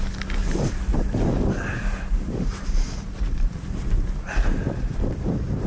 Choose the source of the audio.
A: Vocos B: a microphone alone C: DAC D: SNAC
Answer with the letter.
B